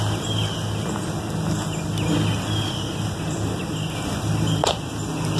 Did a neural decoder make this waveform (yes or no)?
no